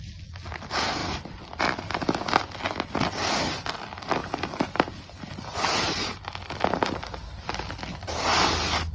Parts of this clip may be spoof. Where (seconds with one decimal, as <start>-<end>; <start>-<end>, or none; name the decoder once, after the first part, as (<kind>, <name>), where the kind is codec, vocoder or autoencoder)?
none